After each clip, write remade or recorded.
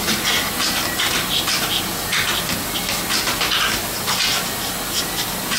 recorded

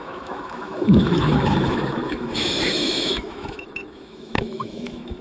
remade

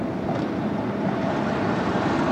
recorded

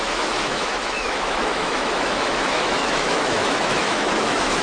remade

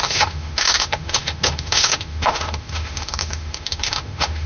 remade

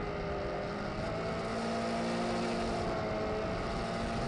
recorded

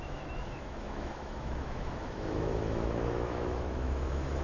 remade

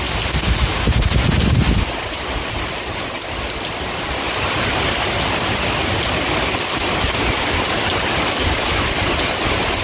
recorded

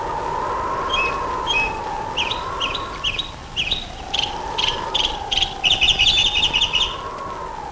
recorded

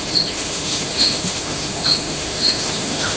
remade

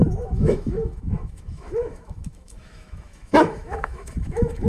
remade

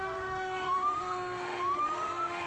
remade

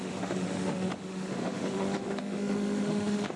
remade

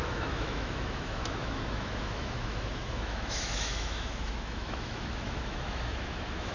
remade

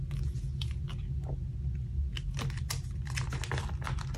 recorded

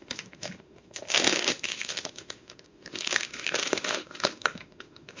remade